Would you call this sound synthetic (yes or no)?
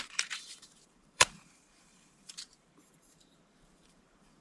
yes